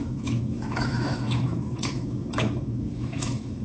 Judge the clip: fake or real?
fake